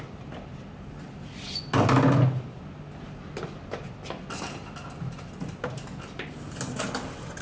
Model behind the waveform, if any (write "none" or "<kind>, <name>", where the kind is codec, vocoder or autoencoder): none